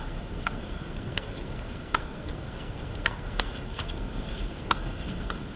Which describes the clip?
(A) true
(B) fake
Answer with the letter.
B